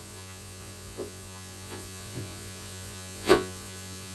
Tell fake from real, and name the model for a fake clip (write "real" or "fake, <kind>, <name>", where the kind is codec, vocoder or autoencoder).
fake, vocoder, Vocos